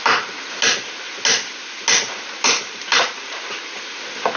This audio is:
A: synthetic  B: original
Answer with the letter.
B